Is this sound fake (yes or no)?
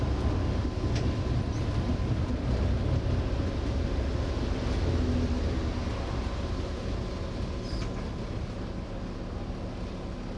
no